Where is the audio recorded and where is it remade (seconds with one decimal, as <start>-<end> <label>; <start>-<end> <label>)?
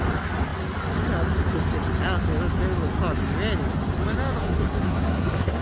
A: 0.0-4.4 recorded; 4.4-5.6 remade